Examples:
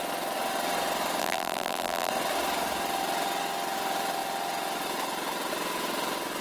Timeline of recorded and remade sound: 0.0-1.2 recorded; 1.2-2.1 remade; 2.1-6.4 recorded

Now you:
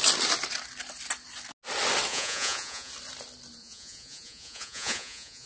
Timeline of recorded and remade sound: 0.0-2.1 recorded; 2.1-2.9 remade; 2.9-3.6 recorded; 3.6-5.5 remade

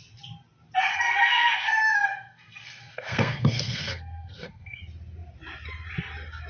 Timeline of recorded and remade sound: 0.0-0.9 recorded; 0.9-4.8 remade; 4.8-6.5 recorded

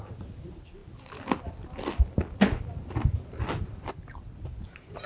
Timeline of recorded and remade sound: 0.0-5.1 recorded

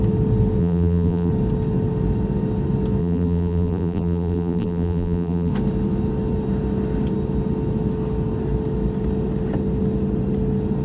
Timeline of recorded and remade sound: 0.0-0.6 recorded; 0.6-1.3 remade; 1.3-3.0 recorded; 3.0-5.5 remade; 5.5-10.8 recorded

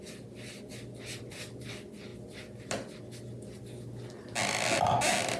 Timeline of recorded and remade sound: 0.0-5.4 recorded

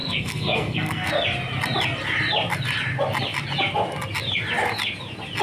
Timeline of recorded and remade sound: 0.0-1.1 remade; 1.1-5.4 recorded